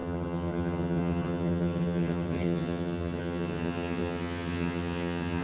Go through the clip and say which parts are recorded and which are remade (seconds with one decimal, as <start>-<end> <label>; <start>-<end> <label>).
0.0-5.4 remade

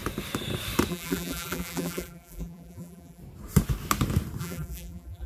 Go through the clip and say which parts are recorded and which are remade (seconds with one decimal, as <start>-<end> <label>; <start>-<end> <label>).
0.0-0.9 recorded; 0.9-3.2 remade; 3.2-4.4 recorded; 4.4-5.3 remade

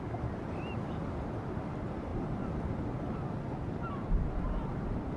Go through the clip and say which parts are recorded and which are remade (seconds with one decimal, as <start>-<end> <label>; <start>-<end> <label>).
0.0-5.2 recorded